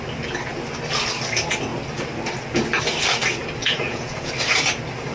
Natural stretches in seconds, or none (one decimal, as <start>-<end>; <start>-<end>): 0.0-3.6; 4.3-5.1